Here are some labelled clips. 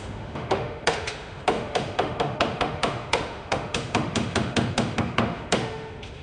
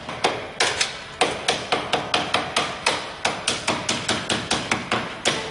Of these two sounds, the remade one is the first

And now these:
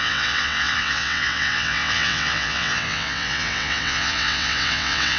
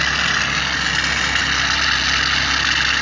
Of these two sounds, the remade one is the first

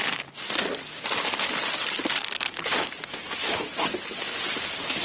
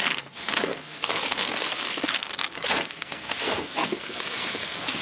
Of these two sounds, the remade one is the second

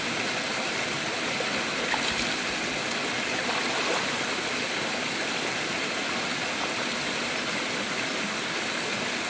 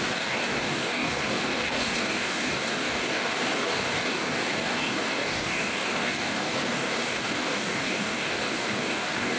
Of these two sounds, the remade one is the second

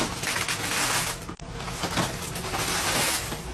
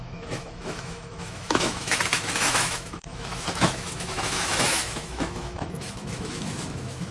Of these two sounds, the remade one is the second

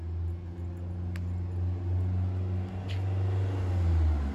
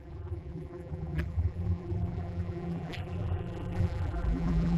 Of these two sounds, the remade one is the second